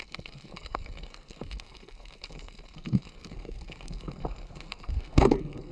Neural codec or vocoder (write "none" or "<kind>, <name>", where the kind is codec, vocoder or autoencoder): codec, SNAC